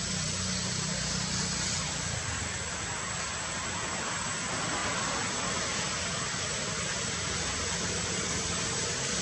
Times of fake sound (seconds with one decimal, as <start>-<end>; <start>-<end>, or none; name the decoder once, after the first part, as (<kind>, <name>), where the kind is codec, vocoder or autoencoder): none